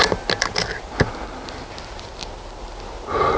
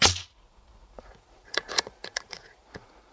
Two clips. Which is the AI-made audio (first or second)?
second